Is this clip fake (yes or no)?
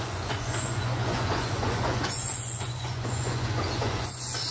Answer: yes